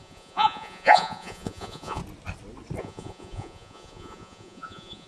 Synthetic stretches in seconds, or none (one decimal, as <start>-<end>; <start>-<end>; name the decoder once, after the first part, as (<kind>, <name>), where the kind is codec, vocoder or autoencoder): 0.0-2.0 (vocoder, Vocos); 2.8-5.1